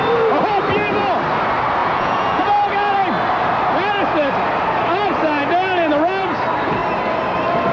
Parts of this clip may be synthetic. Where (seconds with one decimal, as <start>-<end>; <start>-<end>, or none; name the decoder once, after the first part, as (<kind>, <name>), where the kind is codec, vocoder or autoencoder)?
1.8-2.4 (vocoder, Vocos)